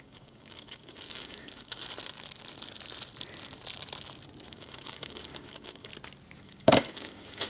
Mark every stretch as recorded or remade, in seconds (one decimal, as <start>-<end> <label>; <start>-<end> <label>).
0.0-1.8 remade; 1.8-4.5 recorded; 4.5-5.9 remade; 5.9-6.4 recorded; 6.4-7.5 remade